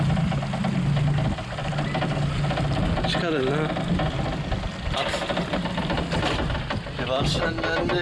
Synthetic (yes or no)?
no